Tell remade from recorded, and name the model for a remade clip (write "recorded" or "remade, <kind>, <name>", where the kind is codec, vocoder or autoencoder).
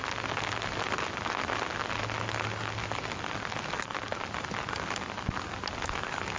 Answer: recorded